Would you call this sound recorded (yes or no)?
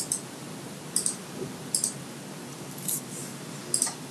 yes